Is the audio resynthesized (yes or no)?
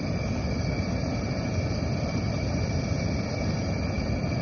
no